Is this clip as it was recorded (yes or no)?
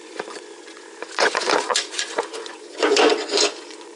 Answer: no